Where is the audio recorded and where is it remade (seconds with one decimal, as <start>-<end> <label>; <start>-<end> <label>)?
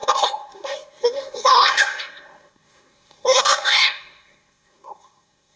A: 0.0-5.6 remade